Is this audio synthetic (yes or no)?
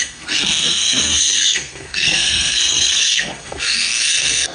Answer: yes